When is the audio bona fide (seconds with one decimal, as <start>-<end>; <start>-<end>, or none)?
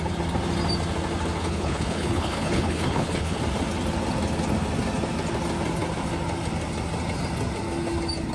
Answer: 0.0-1.4; 3.4-8.3